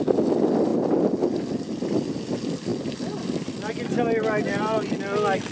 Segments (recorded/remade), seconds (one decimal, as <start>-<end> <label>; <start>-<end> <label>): 0.0-5.5 recorded